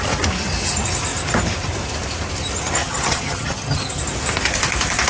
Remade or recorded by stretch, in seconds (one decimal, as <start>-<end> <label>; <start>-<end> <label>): 0.0-2.8 recorded; 2.8-4.0 remade; 4.0-5.1 recorded